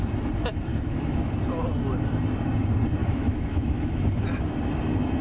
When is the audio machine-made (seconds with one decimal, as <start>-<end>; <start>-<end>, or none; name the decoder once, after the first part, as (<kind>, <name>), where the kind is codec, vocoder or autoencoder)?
0.7-1.3 (autoencoder, DAC-VAE); 3.0-4.0